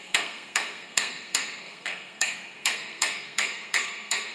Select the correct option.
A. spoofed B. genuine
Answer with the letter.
A